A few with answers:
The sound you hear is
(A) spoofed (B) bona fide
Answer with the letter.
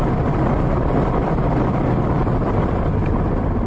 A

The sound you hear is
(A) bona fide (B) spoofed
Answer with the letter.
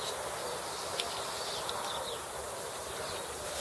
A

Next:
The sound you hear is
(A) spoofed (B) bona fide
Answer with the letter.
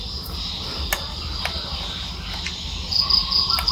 B